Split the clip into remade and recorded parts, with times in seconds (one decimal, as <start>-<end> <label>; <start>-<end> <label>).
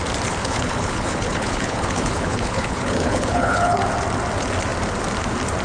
0.0-0.4 recorded; 0.4-3.8 remade; 3.8-5.6 recorded